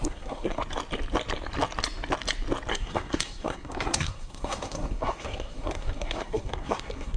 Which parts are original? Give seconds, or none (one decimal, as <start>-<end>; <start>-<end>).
0.6-2.7